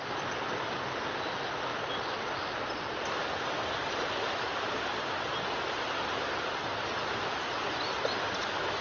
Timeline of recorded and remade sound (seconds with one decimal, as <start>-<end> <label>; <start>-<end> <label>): 0.0-8.8 recorded